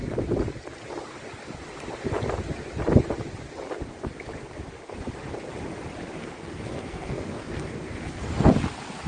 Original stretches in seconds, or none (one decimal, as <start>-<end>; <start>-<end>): 0.0-6.2; 8.5-9.1